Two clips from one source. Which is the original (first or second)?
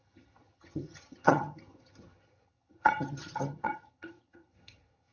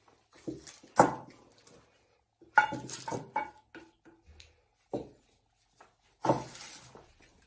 second